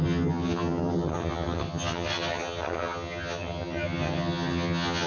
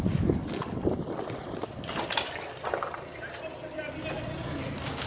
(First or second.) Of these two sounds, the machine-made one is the first